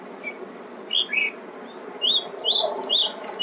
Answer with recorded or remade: recorded